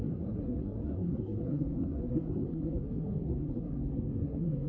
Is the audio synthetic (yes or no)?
yes